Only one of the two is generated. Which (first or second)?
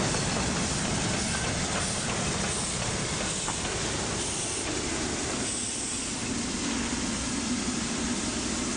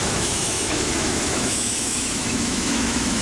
second